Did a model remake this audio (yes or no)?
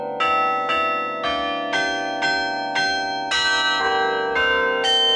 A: no